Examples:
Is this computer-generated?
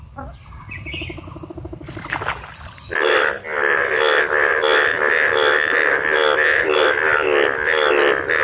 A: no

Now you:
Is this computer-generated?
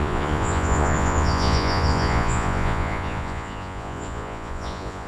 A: yes